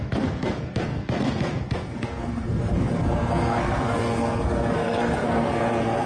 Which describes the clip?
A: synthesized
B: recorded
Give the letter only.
A